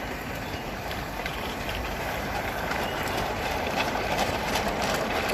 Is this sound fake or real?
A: fake